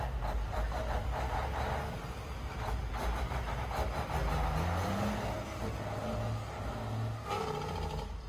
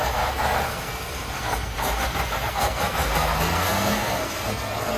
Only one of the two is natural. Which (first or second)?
first